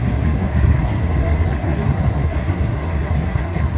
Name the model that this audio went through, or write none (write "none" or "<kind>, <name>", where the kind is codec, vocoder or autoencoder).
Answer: codec, SNAC